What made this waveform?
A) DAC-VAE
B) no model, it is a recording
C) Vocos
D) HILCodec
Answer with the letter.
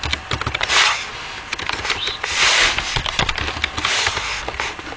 B